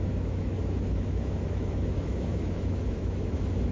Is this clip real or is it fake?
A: fake